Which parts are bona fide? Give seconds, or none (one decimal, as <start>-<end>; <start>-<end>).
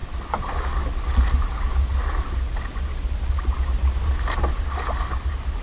0.0-5.6